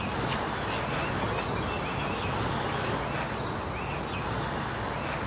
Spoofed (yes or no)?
no